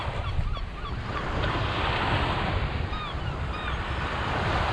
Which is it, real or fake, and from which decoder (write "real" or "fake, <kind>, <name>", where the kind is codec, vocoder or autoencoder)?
real